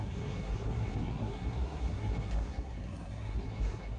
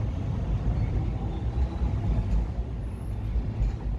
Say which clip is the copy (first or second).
first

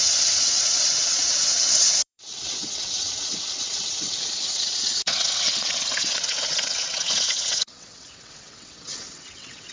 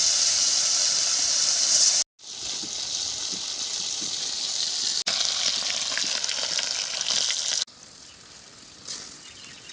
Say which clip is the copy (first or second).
first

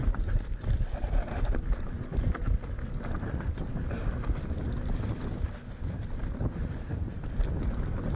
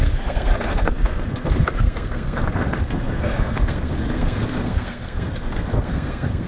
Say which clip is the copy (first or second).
second